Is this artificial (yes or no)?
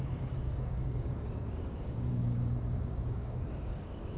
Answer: yes